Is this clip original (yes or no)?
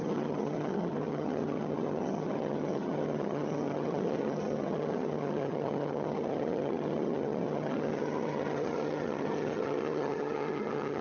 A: no